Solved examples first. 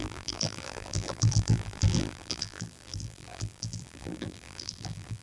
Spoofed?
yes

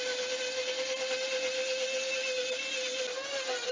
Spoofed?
no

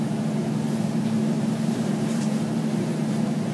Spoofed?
yes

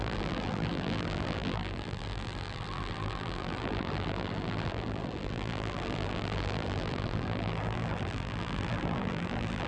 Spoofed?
yes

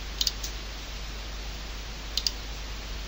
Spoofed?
no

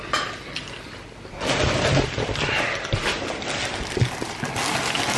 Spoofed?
no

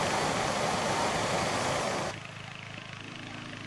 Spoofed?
no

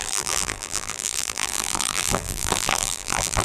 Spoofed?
yes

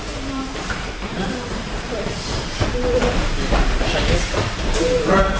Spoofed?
yes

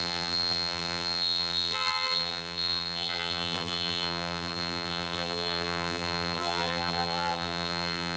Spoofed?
yes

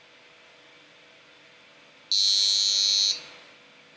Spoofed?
no